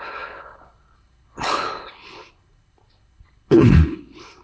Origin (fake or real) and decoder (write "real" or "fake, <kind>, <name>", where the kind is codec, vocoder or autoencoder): fake, codec, HILCodec